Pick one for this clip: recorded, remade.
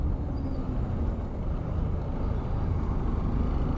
recorded